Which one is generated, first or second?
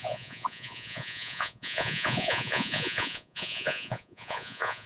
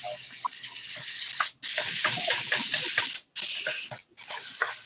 first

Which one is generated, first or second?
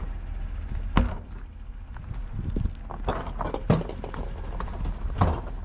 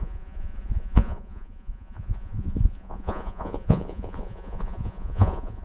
second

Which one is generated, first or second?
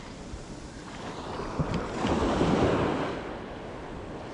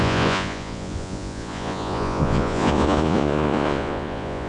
second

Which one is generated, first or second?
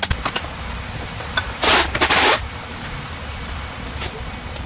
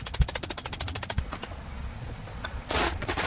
second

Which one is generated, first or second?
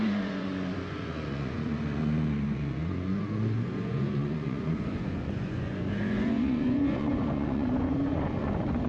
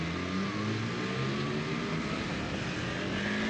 first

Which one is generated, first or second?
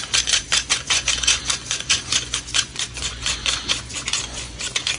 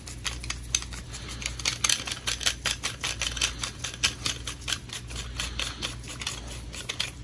first